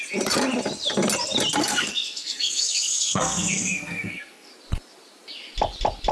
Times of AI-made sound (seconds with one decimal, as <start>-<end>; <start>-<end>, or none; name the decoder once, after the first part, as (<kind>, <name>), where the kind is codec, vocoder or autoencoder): 1.6-4.5 (codec, SNAC)